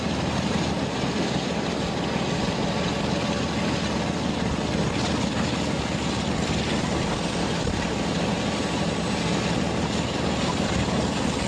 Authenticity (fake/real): real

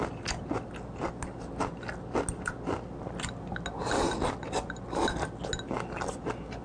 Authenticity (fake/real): real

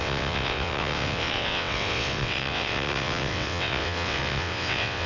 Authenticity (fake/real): fake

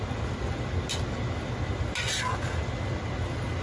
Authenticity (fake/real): real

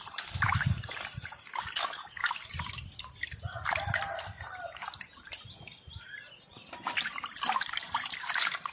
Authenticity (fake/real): real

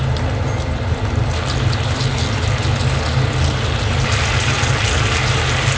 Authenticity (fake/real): real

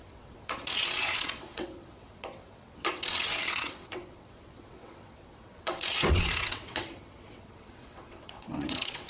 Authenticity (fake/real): fake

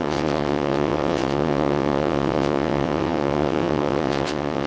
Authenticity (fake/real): fake